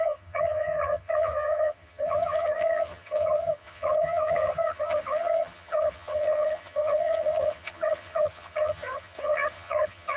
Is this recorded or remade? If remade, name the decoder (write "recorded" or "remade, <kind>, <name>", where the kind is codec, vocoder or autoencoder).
remade, vocoder, HiFi-GAN